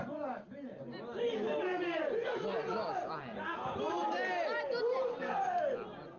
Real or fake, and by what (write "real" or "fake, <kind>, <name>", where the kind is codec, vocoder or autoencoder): real